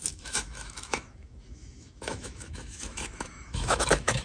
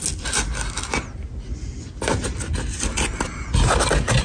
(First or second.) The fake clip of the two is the first